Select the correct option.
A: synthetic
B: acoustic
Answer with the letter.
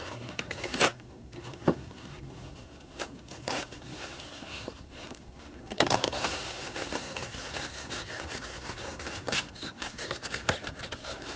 A